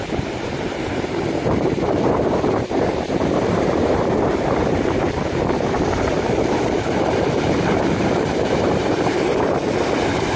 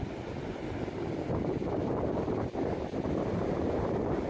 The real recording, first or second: second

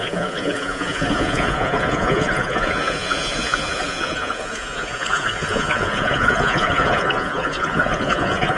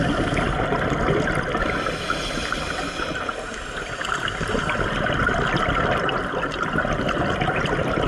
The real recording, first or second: second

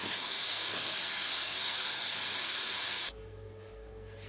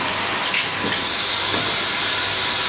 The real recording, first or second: second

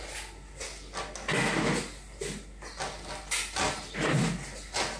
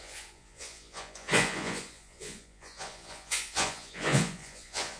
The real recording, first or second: first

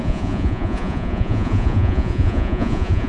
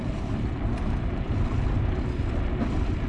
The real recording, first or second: second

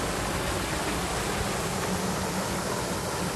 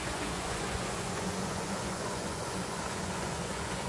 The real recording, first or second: first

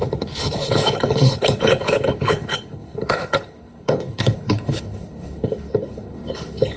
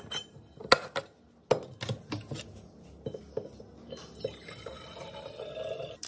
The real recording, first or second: second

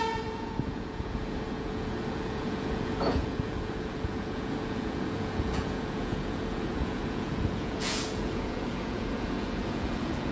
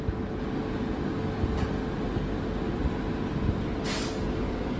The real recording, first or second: second